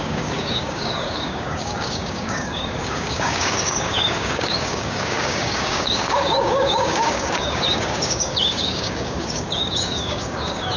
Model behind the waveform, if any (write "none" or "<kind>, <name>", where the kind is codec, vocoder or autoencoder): codec, DAC